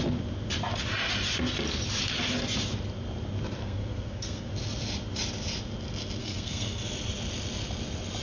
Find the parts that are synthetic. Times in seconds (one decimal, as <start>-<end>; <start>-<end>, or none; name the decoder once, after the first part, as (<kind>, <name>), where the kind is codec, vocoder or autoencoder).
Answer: 3.6-4.5 (codec, SNAC); 6.2-6.8

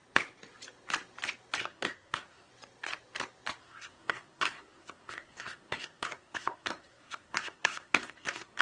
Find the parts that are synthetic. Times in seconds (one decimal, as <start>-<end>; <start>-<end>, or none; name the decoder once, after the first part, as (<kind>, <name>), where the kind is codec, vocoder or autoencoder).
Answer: 1.6-2.5 (codec, SNAC); 3.6-8.6

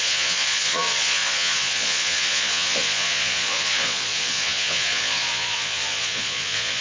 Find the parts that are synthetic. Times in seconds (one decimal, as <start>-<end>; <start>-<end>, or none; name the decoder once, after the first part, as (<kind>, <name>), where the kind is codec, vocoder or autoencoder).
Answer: 0.0-6.8 (vocoder, Vocos)